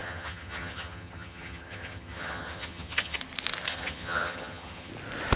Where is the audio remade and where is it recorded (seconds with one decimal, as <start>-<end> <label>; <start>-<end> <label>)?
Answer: 0.0-3.2 remade; 3.2-3.7 recorded; 3.7-4.9 remade; 4.9-5.4 recorded

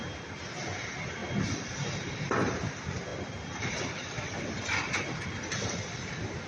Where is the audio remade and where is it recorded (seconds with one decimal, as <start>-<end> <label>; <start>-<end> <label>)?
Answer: 0.0-1.2 recorded; 1.2-2.2 remade; 2.2-3.1 recorded; 3.1-6.1 remade; 6.1-6.5 recorded

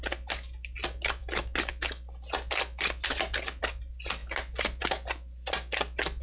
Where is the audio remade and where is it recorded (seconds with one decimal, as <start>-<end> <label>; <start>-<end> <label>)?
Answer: 0.0-6.2 recorded

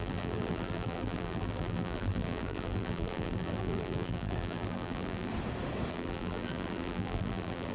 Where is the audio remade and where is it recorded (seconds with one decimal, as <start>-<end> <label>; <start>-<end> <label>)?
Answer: 0.0-5.3 remade; 5.3-5.9 recorded; 5.9-7.7 remade

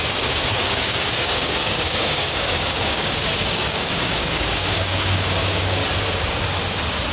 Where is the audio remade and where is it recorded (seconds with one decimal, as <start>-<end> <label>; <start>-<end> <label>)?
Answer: 0.0-5.8 remade; 5.8-7.1 recorded

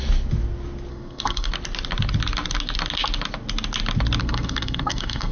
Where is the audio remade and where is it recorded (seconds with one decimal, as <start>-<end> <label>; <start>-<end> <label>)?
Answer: 0.0-0.9 recorded; 0.9-1.5 remade; 1.5-4.2 recorded; 4.2-5.3 remade